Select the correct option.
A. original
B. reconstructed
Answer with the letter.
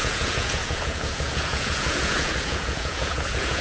B